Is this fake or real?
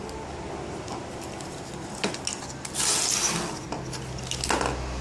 real